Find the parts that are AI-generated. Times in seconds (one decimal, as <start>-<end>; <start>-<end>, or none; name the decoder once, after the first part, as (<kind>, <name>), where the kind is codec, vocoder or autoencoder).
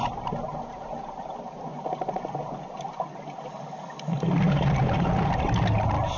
none